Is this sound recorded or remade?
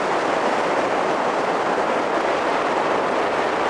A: recorded